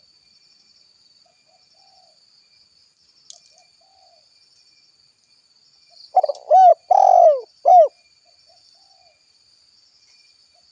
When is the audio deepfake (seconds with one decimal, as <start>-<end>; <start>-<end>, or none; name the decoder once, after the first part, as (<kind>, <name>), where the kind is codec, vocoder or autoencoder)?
none

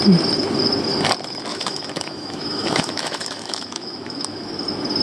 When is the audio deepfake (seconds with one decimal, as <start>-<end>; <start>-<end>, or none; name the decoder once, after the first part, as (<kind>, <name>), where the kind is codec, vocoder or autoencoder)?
1.5-4.5 (autoencoder, DAC-VAE)

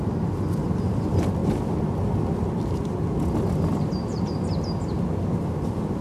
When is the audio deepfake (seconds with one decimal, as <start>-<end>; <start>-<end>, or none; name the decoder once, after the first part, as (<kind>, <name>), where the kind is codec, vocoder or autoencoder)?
none

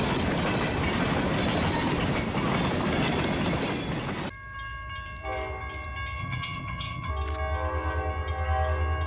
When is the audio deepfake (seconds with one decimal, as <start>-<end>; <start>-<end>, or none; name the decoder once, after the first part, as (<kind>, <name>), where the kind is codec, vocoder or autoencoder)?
6.2-7.1 (vocoder, HiFi-GAN)

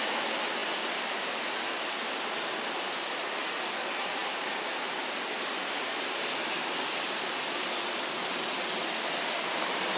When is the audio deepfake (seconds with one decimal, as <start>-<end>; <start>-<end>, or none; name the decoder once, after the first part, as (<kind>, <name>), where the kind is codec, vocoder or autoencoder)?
none

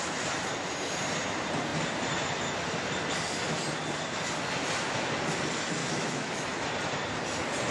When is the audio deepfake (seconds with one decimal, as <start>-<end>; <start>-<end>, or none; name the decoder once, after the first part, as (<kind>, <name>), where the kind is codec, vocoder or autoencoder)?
5.8-6.6 (autoencoder, DAC-VAE)

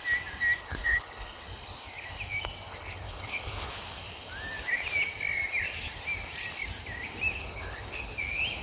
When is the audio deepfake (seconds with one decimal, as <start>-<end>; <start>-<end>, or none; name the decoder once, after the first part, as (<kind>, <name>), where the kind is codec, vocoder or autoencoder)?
0.6-1.4 (codec, HILCodec); 2.7-3.7; 7.4-8.1

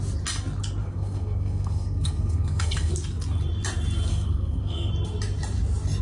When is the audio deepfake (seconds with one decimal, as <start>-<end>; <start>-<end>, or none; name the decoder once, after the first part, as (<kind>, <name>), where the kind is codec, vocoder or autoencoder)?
0.8-2.9 (codec, SNAC); 4.1-4.9